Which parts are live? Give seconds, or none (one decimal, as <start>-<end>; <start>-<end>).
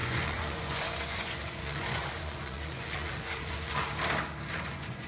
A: 3.8-4.5